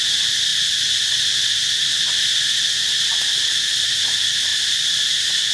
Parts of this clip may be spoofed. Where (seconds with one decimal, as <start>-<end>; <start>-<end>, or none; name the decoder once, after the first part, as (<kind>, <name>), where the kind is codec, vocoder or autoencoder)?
none